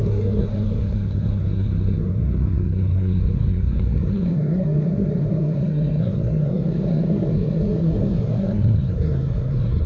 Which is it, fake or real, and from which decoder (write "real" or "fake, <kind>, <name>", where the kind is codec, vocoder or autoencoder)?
fake, codec, SNAC